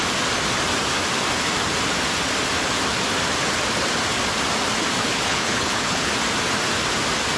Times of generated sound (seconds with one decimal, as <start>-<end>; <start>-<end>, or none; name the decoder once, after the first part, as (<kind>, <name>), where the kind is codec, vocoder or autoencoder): 5.0-6.1 (codec, HILCodec)